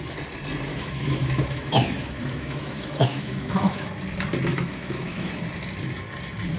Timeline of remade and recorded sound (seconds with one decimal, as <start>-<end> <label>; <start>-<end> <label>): 0.0-0.7 recorded; 0.7-3.9 remade; 3.9-4.5 recorded; 4.5-5.3 remade; 5.3-6.6 recorded